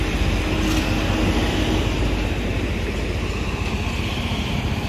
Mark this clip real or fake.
real